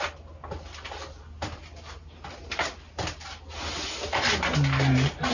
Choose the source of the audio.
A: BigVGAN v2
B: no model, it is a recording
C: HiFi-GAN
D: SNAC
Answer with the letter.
B